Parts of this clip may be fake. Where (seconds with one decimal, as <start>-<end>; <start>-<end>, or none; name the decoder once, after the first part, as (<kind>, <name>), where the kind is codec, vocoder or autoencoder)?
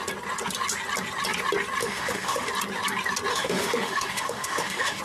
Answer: 1.8-2.5 (autoencoder, DAC-VAE); 3.3-5.0